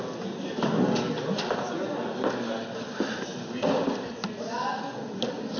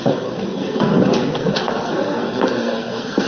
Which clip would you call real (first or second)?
first